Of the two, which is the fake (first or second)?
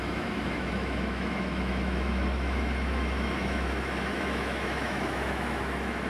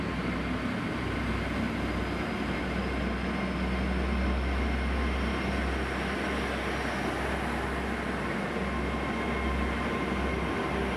first